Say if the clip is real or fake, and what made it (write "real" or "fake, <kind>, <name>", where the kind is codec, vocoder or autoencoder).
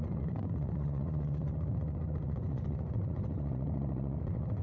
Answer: fake, vocoder, Vocos